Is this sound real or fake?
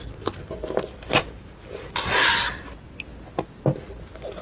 real